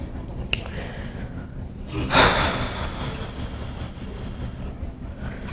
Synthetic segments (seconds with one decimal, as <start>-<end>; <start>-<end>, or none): none